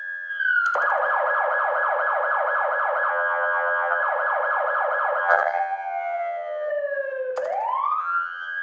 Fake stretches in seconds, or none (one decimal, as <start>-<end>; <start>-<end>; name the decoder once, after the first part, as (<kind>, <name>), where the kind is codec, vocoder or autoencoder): 0.0-0.4 (vocoder, HiFi-GAN); 3.1-4.0; 5.2-6.7; 8.0-8.6